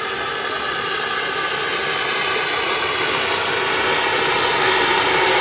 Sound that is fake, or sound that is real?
real